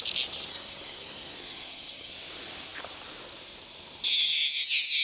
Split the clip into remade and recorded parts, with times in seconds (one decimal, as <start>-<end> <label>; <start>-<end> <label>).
0.0-0.5 recorded; 0.5-2.1 remade; 2.1-5.0 recorded